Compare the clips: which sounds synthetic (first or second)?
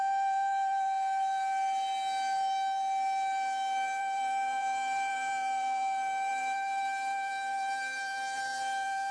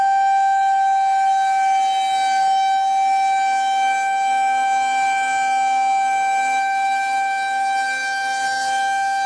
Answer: first